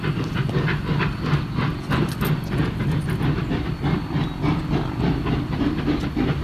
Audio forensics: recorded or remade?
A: recorded